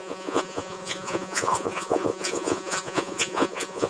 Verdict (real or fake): fake